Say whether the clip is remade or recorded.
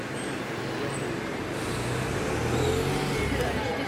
recorded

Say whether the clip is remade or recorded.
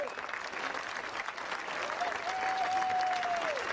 recorded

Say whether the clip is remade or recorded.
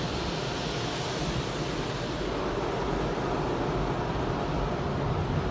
recorded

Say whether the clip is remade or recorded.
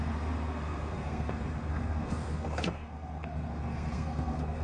remade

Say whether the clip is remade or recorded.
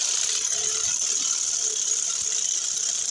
recorded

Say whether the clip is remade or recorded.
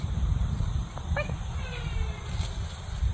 recorded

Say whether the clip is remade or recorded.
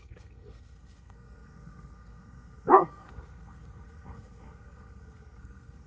remade